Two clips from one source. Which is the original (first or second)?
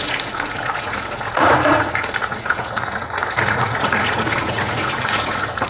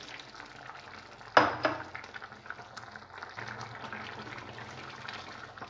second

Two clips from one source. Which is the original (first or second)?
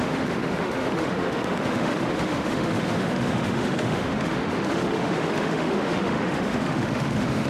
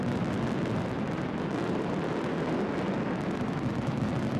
second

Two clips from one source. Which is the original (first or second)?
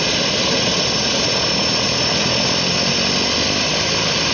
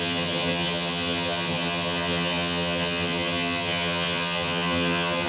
first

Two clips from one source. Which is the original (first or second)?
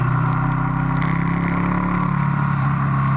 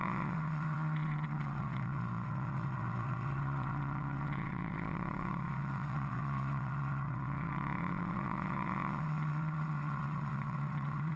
first